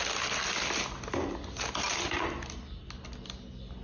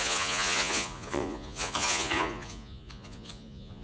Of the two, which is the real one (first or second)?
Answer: first